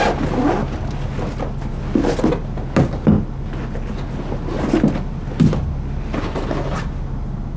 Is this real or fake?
real